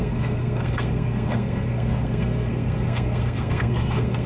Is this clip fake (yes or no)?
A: yes